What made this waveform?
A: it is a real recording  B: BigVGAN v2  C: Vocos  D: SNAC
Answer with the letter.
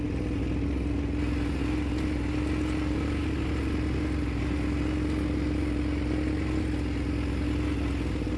A